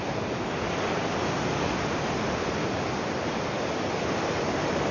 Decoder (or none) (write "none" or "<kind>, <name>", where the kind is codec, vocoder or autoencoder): none